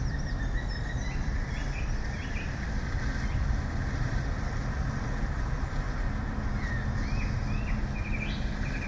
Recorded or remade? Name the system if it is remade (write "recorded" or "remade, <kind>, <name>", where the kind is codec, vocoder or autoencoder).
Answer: recorded